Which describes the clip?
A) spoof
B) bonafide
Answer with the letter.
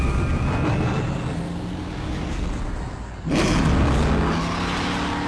B